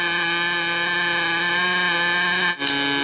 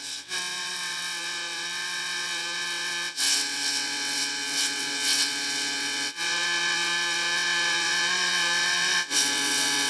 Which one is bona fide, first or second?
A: first